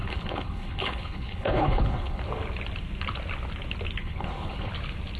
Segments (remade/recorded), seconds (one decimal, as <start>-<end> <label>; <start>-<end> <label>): 0.0-2.2 remade; 2.2-4.0 recorded; 4.0-4.7 remade; 4.7-5.2 recorded